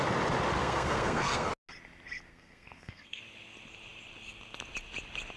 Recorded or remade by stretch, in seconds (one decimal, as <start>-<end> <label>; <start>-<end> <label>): 0.0-0.6 recorded; 0.6-1.5 remade; 1.5-2.3 recorded; 2.3-3.2 remade; 3.2-5.4 recorded